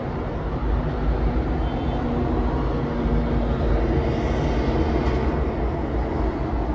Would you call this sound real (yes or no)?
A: yes